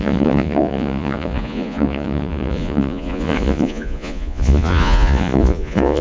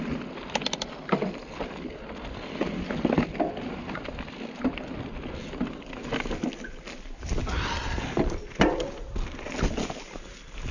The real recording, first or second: second